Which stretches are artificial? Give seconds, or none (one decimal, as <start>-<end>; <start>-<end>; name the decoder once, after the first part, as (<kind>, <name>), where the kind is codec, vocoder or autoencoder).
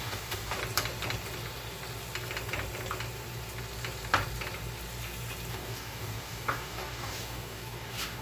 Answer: 0.0-0.6 (codec, DAC); 5.5-8.2